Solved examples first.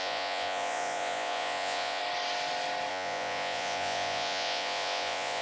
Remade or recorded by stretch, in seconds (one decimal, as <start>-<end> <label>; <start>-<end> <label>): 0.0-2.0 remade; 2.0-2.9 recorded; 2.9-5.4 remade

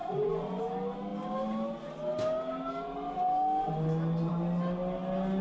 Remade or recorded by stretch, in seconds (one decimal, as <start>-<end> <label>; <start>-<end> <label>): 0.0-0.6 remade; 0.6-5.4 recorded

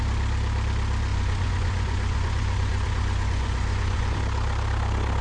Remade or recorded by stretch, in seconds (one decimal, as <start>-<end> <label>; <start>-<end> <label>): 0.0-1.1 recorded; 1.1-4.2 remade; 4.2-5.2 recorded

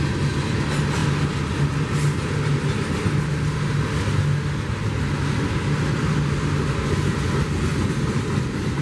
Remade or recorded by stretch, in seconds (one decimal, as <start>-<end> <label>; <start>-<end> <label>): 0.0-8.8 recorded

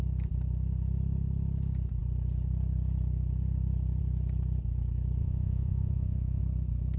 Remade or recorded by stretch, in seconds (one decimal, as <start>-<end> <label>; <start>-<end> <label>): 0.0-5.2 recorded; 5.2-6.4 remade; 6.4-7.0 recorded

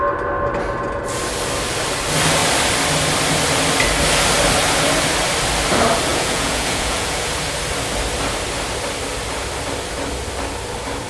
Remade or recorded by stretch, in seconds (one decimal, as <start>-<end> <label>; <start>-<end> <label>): 0.0-6.1 recorded; 6.1-7.3 remade; 7.3-11.1 recorded

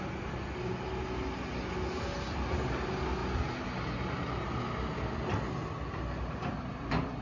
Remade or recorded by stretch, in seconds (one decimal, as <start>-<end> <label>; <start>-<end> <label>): 0.0-7.2 recorded